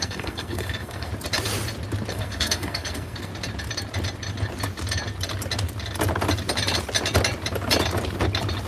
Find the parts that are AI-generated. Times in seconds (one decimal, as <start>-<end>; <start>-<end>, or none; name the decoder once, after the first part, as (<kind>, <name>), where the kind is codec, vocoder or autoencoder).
0.0-1.1 (codec, SNAC); 2.1-3.3